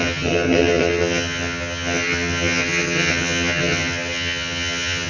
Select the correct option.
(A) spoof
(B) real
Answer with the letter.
A